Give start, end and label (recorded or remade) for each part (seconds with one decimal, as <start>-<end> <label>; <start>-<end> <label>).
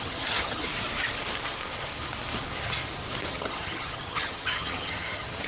0.0-0.7 remade; 0.7-3.3 recorded; 3.3-5.5 remade